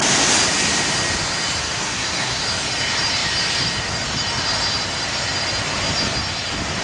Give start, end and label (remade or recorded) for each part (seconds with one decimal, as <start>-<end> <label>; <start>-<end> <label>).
0.0-1.6 recorded; 1.6-2.4 remade; 2.4-6.8 recorded